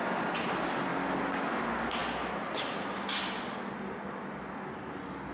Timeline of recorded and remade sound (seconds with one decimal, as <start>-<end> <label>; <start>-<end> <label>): 0.0-5.3 recorded